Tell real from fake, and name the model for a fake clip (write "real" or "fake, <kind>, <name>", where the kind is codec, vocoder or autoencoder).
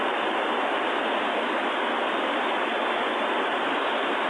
real